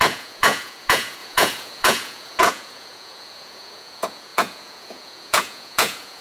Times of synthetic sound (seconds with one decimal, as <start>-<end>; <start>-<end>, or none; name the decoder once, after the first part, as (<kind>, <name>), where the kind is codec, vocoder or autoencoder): 0.0-6.2 (vocoder, Vocos)